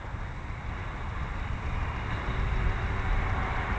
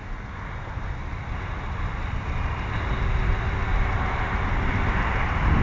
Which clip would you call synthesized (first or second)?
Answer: first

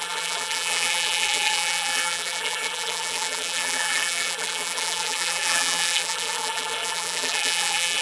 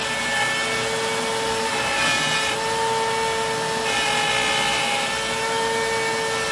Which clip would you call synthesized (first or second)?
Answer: first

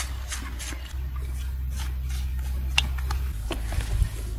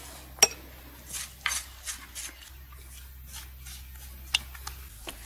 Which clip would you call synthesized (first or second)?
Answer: first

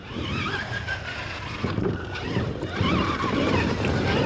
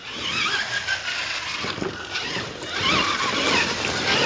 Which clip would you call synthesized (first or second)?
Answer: first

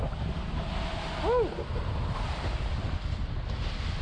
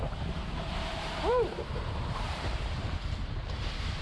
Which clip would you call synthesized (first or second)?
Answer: second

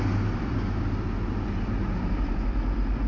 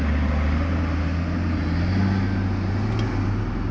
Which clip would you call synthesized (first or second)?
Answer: first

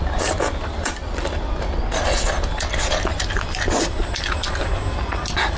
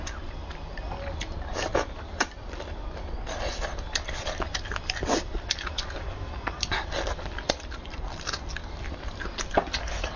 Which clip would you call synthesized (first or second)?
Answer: second